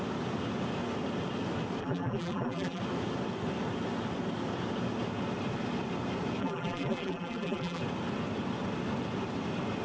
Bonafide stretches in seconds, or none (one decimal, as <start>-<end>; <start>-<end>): 0.0-1.8; 2.8-6.4; 7.8-9.8